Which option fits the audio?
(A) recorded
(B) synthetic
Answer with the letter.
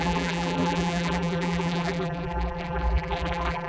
B